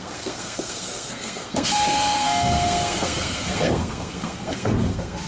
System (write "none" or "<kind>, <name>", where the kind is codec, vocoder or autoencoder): codec, SNAC